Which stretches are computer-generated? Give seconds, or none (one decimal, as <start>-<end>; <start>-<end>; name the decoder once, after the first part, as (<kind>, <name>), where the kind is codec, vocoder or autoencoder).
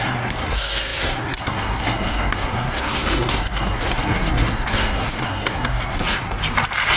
0.0-6.4 (codec, SNAC)